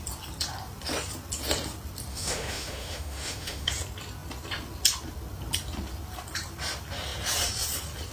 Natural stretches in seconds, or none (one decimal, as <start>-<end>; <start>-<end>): 0.0-2.1; 3.7-8.1